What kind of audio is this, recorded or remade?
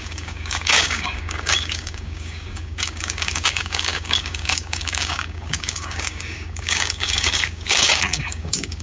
remade